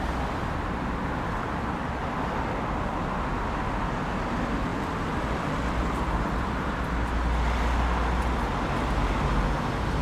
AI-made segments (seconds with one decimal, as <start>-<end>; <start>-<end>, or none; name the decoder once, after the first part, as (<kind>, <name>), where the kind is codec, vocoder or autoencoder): none